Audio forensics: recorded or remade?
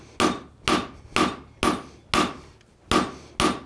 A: recorded